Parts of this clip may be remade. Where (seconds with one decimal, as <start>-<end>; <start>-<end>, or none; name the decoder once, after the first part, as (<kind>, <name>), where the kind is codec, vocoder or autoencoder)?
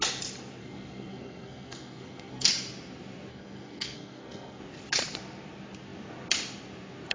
0.6-2.5 (codec, SNAC); 3.3-4.6